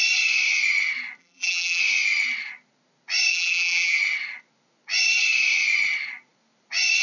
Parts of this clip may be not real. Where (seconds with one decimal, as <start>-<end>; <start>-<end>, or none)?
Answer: 1.2-1.8; 3.3-4.0